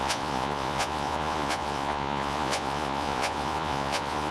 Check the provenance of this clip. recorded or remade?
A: remade